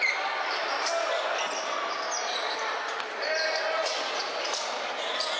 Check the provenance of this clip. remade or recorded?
recorded